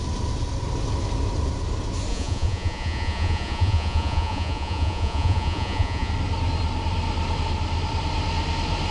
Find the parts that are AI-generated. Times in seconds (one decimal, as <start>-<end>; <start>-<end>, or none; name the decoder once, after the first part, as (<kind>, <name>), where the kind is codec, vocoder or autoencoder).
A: 2.1-6.1 (vocoder, Vocos)